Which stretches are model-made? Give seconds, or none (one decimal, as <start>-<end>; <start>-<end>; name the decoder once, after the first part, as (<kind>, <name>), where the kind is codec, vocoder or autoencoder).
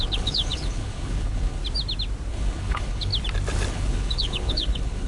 0.0-1.6 (codec, HILCodec); 2.3-3.1; 3.7-5.1